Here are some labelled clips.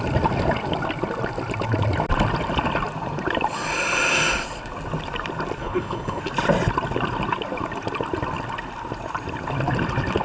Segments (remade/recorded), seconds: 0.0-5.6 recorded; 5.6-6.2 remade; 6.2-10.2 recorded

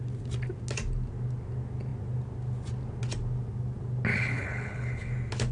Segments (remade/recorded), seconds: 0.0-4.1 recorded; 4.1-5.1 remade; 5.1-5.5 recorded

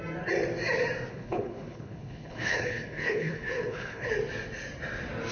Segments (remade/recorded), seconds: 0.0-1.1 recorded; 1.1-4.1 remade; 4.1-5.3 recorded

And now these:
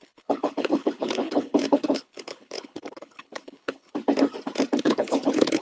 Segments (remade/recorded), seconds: 0.0-3.9 remade; 3.9-4.8 recorded; 4.8-5.6 remade

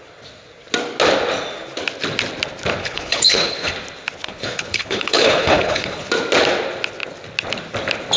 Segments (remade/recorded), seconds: 0.0-2.8 recorded; 2.8-3.7 remade; 3.7-4.2 recorded; 4.2-6.1 remade; 6.1-8.2 recorded

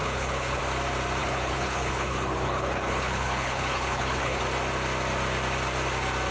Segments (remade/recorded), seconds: 0.0-0.6 remade; 0.6-1.2 recorded; 1.2-4.4 remade; 4.4-6.3 recorded

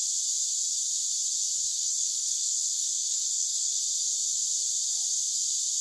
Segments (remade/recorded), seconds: 0.0-1.7 recorded; 1.7-3.8 remade; 3.8-5.8 recorded

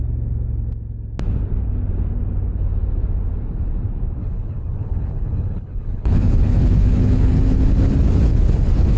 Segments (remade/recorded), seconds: 0.0-4.2 recorded; 4.2-7.4 remade; 7.4-8.3 recorded; 8.3-9.0 remade